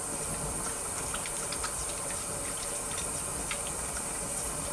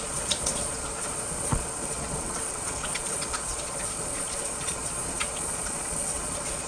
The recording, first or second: first